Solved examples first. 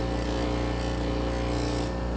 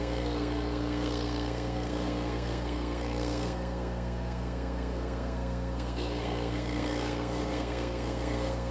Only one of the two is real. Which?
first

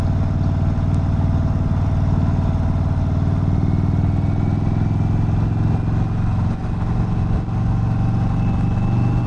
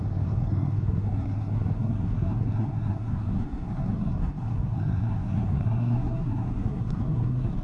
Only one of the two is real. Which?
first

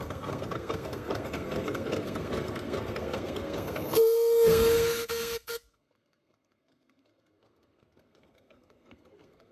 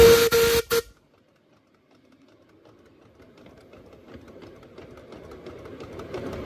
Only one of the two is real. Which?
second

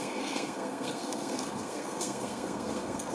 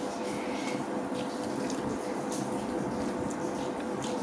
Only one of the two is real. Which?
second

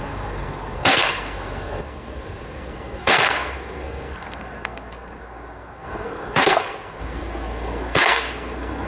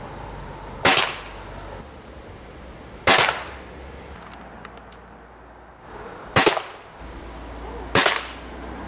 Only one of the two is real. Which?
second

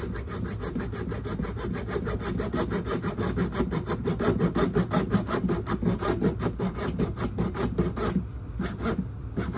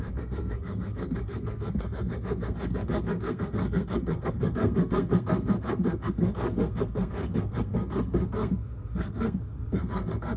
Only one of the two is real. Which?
first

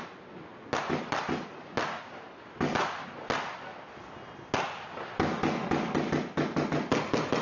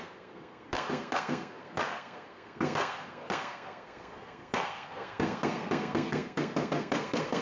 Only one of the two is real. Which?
first